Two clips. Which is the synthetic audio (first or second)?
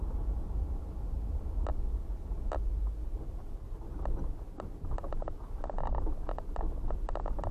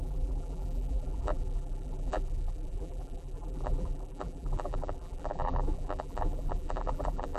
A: second